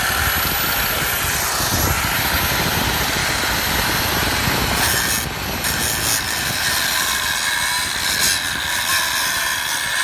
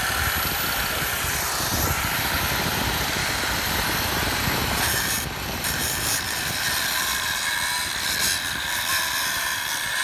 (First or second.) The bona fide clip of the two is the first